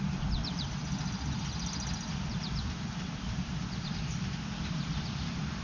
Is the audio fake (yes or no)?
no